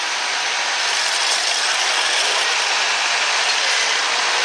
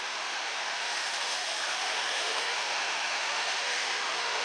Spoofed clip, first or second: second